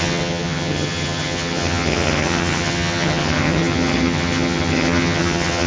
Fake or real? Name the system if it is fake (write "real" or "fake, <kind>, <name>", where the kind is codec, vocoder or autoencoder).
fake, vocoder, HiFi-GAN